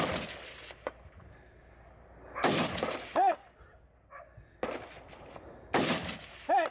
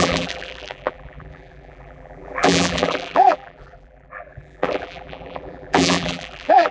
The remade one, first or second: second